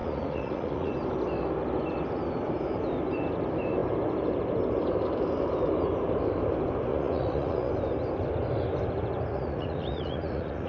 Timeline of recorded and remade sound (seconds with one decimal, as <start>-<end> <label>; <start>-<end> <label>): 0.0-0.9 remade; 0.9-6.9 recorded; 6.9-7.7 remade; 7.7-9.3 recorded; 9.3-10.7 remade